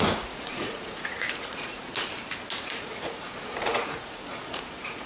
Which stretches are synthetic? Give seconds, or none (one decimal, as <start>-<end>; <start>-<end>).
0.0-1.9; 2.6-5.1